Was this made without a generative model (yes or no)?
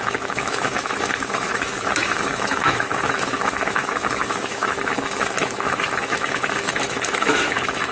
no